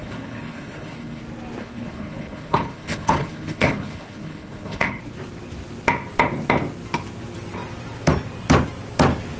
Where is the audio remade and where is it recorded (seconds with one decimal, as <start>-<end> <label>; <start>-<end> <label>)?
0.0-1.2 remade; 1.2-1.6 recorded; 1.6-5.0 remade; 5.0-9.4 recorded